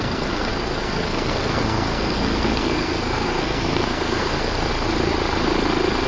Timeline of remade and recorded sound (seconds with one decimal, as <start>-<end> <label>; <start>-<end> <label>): 0.0-4.7 remade; 4.7-6.1 recorded